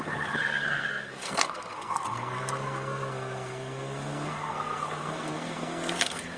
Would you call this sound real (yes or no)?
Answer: no